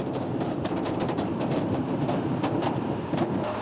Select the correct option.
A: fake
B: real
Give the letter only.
A